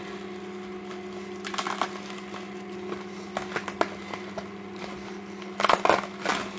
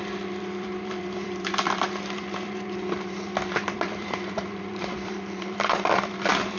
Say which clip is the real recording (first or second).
first